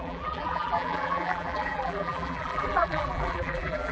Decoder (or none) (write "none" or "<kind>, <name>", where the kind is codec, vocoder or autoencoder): vocoder, BigVGAN v2